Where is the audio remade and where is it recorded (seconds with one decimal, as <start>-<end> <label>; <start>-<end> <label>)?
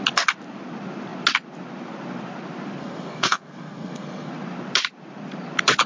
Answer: 0.0-2.8 recorded; 2.8-4.3 remade; 4.3-5.9 recorded